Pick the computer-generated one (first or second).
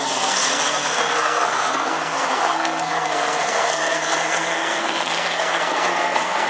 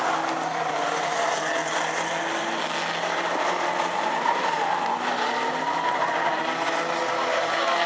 first